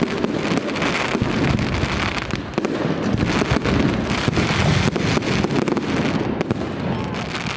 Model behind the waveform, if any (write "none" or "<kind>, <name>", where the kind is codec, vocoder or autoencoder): none